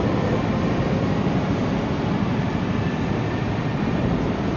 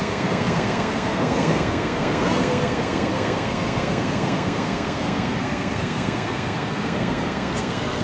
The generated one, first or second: second